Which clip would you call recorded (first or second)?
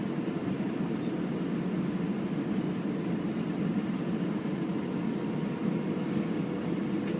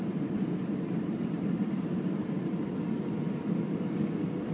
first